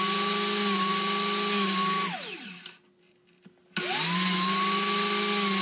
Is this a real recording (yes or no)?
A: yes